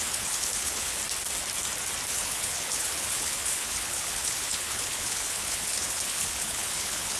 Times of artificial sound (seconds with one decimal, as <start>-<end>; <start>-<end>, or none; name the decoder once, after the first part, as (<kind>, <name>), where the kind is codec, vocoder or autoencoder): 0.0-1.0 (codec, HILCodec); 2.1-7.2